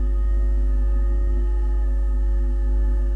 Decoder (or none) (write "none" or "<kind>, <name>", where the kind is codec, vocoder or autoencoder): codec, SNAC